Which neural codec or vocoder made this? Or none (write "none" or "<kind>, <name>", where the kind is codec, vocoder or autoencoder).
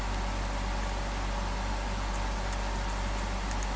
none